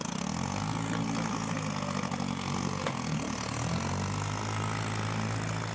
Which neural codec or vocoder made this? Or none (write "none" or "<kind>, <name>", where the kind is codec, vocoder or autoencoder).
none